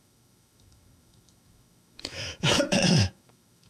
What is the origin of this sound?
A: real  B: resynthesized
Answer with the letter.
B